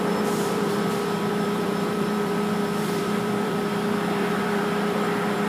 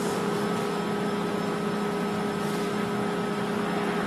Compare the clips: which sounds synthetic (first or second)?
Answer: first